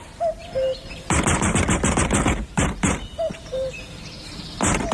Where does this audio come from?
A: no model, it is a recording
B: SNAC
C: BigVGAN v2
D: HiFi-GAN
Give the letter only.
C